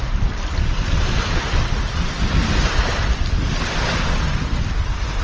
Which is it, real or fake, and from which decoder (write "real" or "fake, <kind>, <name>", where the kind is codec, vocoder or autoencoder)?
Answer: real